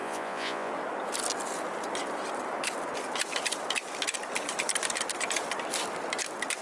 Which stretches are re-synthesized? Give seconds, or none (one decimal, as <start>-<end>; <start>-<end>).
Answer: 0.0-0.7